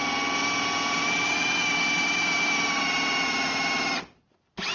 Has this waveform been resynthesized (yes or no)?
no